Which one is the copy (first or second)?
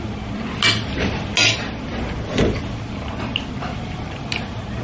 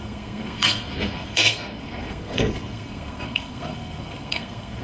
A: second